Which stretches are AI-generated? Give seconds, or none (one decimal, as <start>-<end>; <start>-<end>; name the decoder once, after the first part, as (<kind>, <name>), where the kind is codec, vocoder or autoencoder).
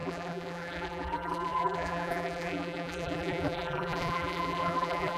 0.0-5.2 (vocoder, BigVGAN v2)